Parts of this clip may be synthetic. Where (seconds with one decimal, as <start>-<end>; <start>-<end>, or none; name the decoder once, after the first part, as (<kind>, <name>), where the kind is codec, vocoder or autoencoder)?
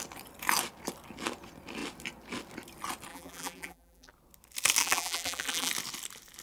3.1-4.1 (vocoder, BigVGAN v2); 4.8-5.7